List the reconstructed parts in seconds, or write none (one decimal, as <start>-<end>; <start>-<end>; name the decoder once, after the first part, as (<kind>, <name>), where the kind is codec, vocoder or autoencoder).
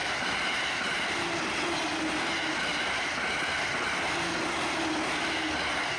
none